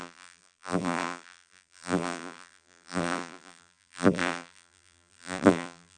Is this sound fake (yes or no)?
yes